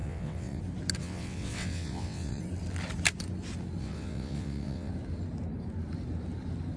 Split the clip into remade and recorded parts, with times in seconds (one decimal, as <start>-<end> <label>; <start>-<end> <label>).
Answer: 0.0-0.6 remade; 0.6-1.0 recorded; 1.0-2.4 remade; 2.4-3.8 recorded; 3.8-4.9 remade; 4.9-6.8 recorded